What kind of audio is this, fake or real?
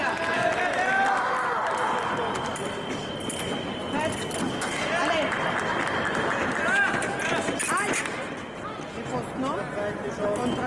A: real